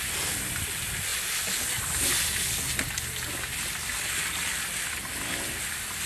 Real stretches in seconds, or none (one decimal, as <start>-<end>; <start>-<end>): 0.0-6.1

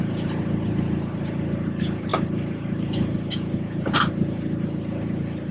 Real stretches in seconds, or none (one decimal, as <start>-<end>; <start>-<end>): 0.0-5.5

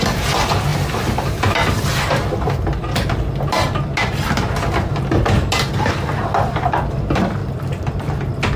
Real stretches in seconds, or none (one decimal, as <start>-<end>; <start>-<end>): 0.0-8.6

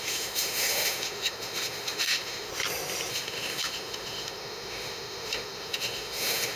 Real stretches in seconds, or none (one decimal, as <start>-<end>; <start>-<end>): 2.5-3.1

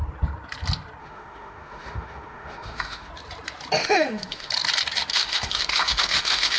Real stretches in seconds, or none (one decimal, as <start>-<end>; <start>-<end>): 0.0-1.0; 3.1-3.8; 4.5-5.1

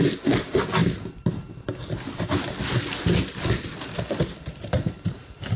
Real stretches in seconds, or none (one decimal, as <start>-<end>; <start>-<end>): 0.0-5.6

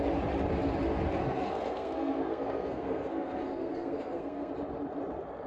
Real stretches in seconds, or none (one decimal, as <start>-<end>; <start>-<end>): 0.0-1.2; 4.5-5.5